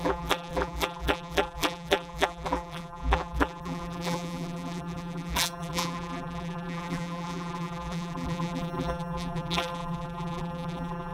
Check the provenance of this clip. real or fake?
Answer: fake